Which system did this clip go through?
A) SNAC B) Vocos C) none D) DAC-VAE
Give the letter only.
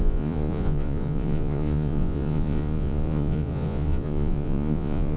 B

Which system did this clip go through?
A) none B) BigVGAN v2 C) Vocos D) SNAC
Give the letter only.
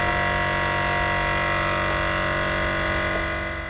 A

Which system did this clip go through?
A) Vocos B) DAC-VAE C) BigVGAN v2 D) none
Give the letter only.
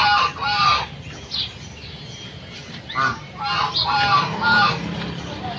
D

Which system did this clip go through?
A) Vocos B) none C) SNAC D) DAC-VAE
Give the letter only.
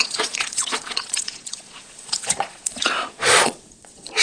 A